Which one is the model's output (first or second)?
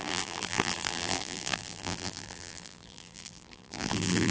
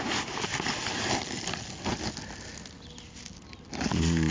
first